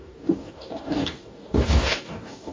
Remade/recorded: remade